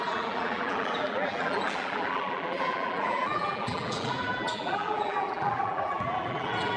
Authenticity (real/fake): fake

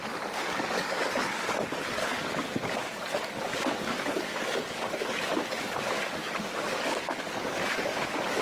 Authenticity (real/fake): fake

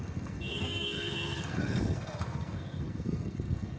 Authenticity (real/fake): fake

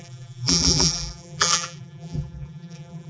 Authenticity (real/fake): fake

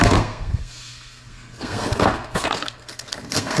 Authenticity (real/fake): fake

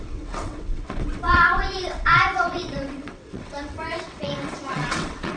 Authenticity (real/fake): fake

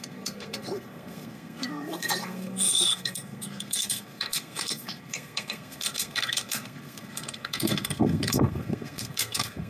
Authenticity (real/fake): fake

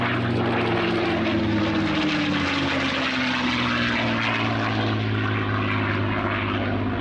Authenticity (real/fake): real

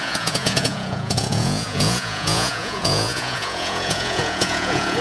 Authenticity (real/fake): fake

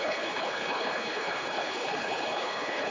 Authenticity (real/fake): fake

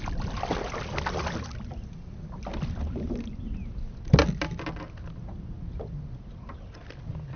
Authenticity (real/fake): real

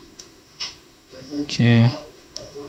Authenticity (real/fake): fake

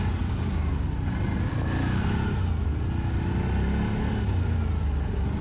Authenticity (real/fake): real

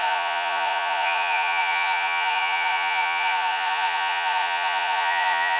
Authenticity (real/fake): fake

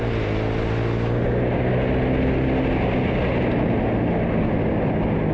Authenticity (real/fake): real